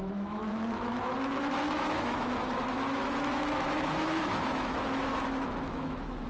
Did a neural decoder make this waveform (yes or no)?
yes